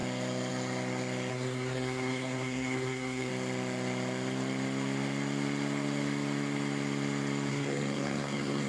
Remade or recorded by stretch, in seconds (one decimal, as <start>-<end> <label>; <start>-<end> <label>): 0.0-1.3 recorded; 1.3-3.3 remade; 3.3-7.5 recorded; 7.5-8.7 remade